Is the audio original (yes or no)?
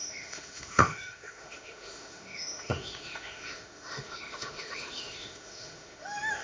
no